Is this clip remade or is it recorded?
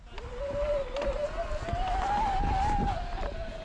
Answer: recorded